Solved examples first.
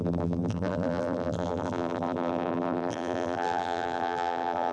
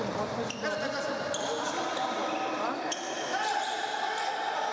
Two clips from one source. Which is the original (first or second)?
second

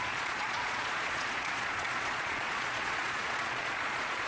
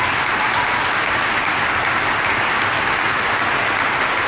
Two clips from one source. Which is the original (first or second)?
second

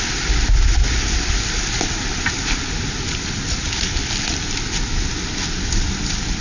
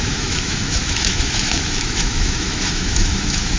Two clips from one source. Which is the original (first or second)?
first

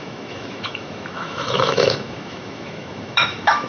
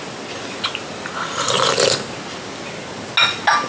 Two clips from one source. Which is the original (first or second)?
second